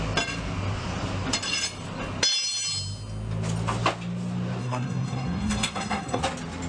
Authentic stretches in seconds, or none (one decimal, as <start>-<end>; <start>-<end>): 0.0-4.6; 6.2-6.7